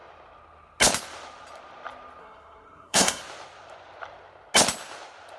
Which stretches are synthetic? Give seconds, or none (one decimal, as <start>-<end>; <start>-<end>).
2.2-3.2